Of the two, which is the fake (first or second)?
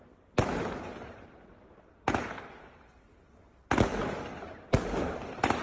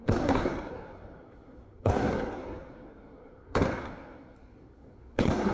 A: second